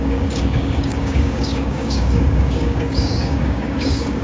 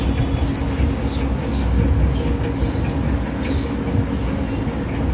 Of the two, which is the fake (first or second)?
first